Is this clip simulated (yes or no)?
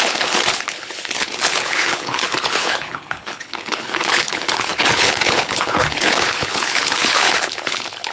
yes